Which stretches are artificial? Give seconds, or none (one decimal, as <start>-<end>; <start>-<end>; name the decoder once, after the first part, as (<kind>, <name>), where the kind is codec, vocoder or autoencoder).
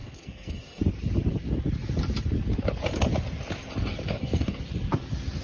0.0-0.8 (codec, SNAC); 3.9-4.6